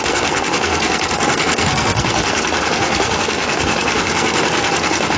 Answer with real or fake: fake